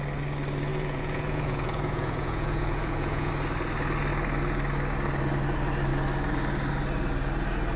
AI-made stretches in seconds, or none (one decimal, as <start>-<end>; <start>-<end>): 0.7-3.3